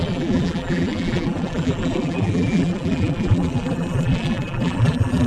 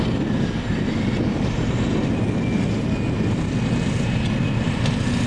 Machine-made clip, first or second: first